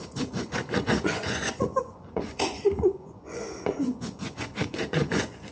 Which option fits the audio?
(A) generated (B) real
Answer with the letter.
A